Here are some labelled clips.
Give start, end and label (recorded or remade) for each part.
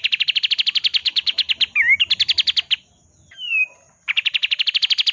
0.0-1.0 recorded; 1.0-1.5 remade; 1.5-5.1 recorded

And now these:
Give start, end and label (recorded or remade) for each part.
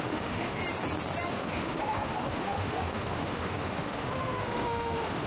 0.0-0.6 remade; 0.6-1.3 recorded; 1.3-5.3 remade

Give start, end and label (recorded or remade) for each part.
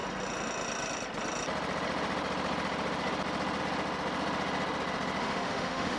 0.0-5.2 recorded; 5.2-6.0 remade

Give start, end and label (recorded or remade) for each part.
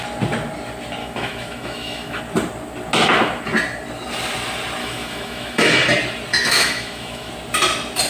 0.0-1.0 recorded; 1.0-2.2 remade; 2.2-4.8 recorded; 4.8-5.8 remade; 5.8-6.3 recorded; 6.3-7.3 remade; 7.3-8.1 recorded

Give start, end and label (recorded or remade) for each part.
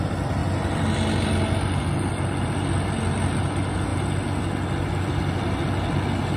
0.0-6.4 recorded